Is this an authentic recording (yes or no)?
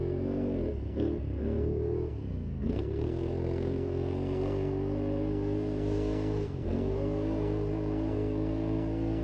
no